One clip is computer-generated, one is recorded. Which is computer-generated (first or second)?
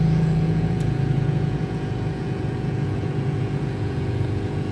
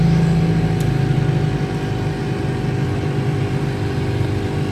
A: first